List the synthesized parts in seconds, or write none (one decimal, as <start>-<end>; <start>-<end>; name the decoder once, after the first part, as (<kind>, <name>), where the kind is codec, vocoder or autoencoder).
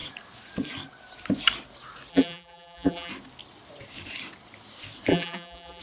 2.1-3.1 (vocoder, BigVGAN v2); 5.1-5.8